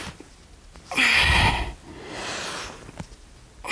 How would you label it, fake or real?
real